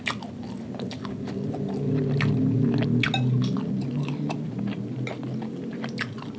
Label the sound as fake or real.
real